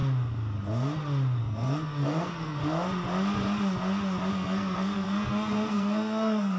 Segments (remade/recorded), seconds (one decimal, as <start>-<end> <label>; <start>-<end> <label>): 0.0-1.4 recorded; 1.4-2.6 remade; 2.6-4.3 recorded; 4.3-6.6 remade